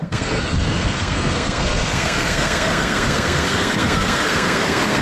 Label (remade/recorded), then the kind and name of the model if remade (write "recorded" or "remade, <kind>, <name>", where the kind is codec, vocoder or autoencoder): remade, codec, SNAC